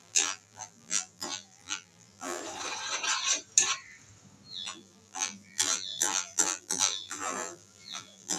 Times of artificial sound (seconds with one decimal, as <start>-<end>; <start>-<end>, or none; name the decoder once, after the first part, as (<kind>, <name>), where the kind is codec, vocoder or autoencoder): 0.0-2.4 (vocoder, BigVGAN v2); 4.5-8.4